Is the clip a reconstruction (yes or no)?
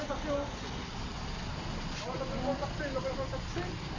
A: no